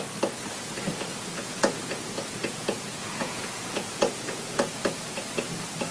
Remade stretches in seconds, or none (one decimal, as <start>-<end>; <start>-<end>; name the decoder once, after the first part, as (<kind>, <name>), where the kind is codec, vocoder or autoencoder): 1.4-4.8 (vocoder, Vocos)